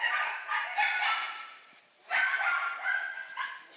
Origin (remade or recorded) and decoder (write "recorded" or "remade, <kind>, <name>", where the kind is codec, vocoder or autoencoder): recorded